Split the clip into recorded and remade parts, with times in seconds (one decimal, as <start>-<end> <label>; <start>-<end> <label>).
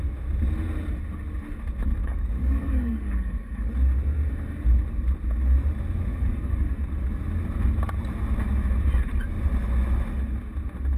0.0-2.0 recorded; 2.0-3.7 remade; 3.7-6.1 recorded; 6.1-6.7 remade; 6.7-11.0 recorded